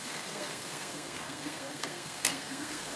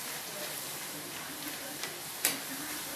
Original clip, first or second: second